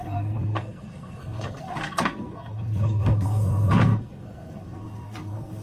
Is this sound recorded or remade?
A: remade